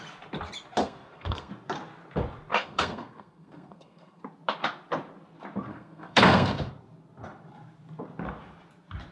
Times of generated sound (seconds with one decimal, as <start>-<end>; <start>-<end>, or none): 0.8-1.5; 2.5-4.2; 5.7-6.7